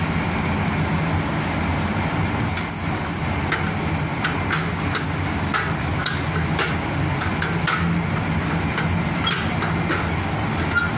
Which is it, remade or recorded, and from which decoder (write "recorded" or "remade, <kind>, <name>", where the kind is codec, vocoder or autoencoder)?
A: recorded